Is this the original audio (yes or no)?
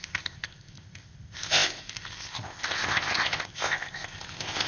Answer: no